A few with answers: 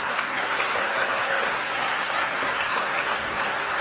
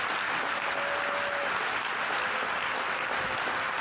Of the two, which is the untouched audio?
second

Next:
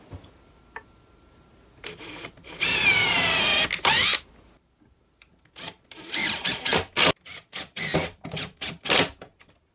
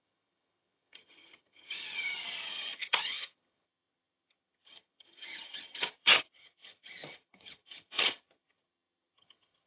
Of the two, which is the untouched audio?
first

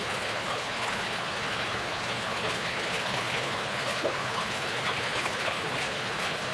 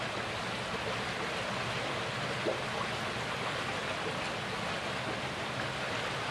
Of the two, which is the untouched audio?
second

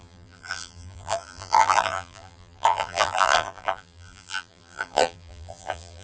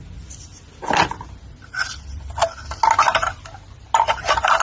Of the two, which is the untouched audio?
second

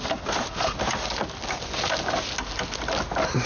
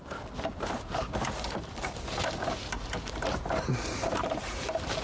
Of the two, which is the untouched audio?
first